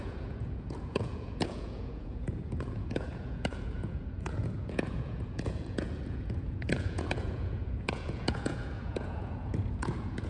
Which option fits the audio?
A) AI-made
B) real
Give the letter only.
A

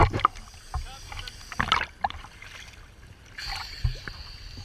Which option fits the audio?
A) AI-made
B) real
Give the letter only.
B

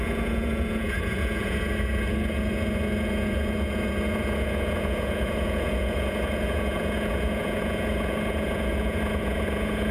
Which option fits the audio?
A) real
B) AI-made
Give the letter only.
B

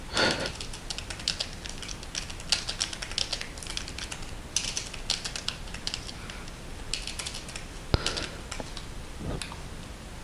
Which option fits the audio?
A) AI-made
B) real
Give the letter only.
B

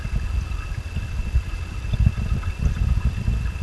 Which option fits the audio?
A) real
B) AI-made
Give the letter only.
A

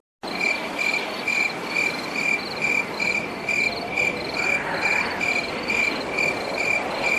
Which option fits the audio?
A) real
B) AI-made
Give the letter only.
A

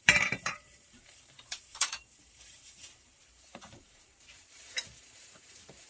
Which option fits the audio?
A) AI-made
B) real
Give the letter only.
A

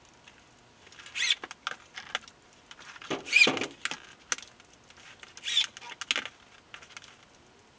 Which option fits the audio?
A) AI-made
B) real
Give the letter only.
B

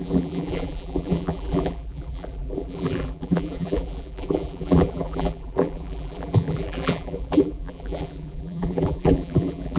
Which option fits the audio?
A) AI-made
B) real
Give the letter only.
A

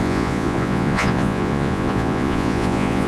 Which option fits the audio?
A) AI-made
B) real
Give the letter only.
A